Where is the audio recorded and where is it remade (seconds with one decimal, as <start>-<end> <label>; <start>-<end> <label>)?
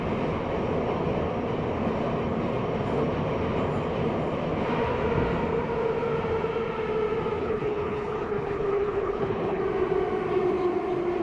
0.0-7.4 recorded; 7.4-9.6 remade; 9.6-11.2 recorded